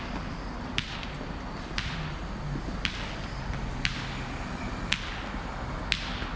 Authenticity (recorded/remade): recorded